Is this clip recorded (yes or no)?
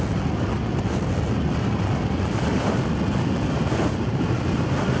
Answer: yes